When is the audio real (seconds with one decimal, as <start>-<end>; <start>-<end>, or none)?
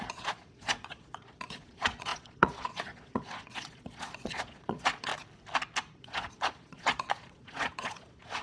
5.1-6.0